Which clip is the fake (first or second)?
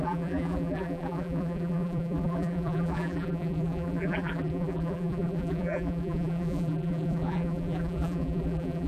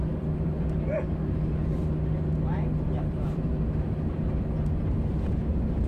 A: first